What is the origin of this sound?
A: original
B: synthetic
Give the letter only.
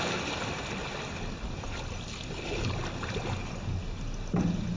A